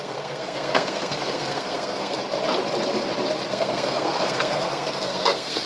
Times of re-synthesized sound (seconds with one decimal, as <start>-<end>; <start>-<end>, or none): 0.0-2.2; 3.5-5.7